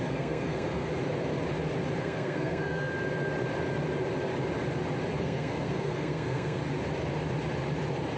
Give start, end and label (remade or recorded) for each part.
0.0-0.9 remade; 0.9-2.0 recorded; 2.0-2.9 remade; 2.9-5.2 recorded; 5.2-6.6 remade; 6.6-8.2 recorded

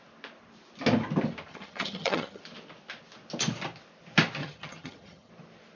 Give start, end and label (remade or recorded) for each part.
0.0-1.5 recorded; 1.5-2.4 remade; 2.4-4.4 recorded; 4.4-5.3 remade; 5.3-5.8 recorded

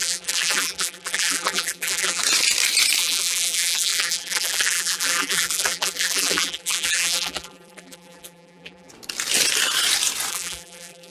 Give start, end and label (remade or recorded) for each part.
0.0-2.2 remade; 2.2-3.0 recorded; 3.0-8.9 remade; 8.9-10.3 recorded; 10.3-11.1 remade

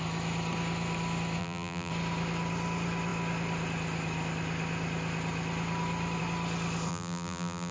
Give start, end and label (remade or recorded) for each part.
0.0-1.4 recorded; 1.4-1.9 remade; 1.9-6.9 recorded; 6.9-7.7 remade

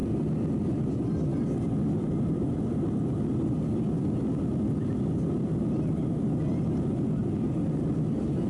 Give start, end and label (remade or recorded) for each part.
0.0-8.5 recorded

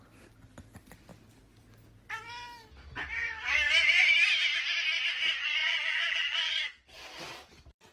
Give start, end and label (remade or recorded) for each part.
0.0-5.6 recorded; 5.6-6.5 remade; 6.5-7.9 recorded

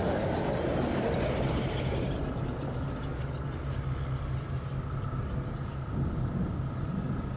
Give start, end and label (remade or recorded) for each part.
0.0-7.4 recorded